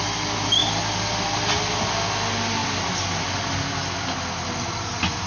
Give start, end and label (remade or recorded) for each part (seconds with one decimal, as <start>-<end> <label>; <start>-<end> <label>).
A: 0.0-5.3 recorded